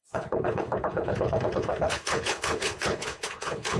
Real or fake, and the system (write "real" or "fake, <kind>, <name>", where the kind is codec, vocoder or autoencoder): fake, codec, HILCodec